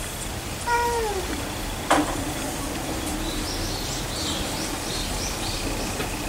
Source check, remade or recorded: recorded